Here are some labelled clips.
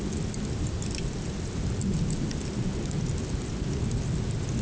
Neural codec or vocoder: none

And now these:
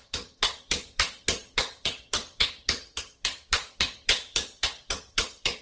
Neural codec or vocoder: vocoder, HiFi-GAN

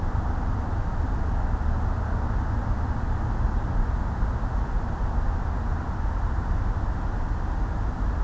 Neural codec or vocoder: none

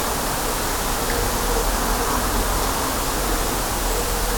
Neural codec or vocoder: none